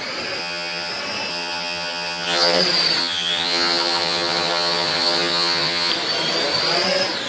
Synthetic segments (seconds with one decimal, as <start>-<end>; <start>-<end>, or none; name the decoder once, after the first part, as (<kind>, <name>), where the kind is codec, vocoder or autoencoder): 0.4-0.9 (vocoder, HiFi-GAN); 1.3-2.6; 3.0-5.9